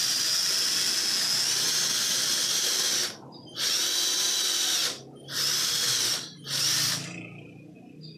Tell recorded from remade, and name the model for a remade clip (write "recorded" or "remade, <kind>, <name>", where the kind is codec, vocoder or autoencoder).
recorded